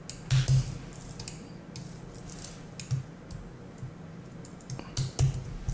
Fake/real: real